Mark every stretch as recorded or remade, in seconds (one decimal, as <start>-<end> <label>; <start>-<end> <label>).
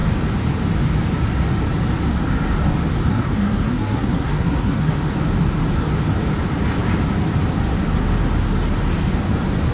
0.0-3.1 recorded; 3.1-5.0 remade; 5.0-9.7 recorded